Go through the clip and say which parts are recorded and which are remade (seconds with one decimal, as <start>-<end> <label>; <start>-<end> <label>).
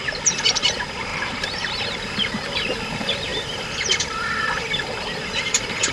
0.0-1.1 remade; 1.1-2.9 recorded; 2.9-5.9 remade